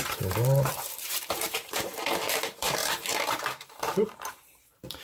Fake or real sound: fake